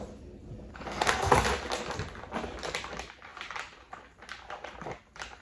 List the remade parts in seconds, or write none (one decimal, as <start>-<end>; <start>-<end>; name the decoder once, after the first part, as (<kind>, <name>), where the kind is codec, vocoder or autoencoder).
0.7-1.3 (codec, SNAC)